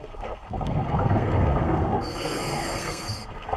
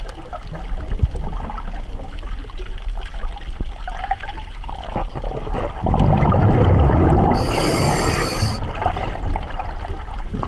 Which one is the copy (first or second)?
first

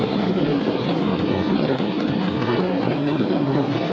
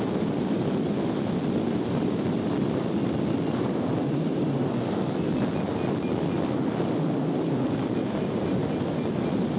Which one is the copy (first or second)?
first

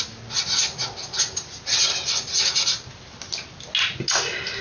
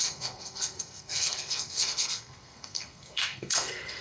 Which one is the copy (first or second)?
second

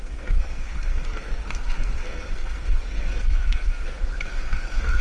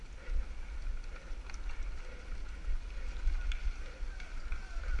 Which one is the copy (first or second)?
first